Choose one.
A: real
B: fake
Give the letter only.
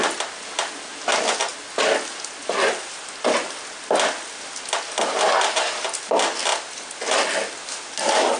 A